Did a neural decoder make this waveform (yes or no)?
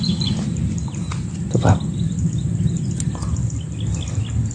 no